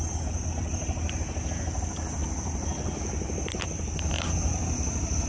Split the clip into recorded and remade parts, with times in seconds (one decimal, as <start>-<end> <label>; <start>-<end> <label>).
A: 0.0-5.3 recorded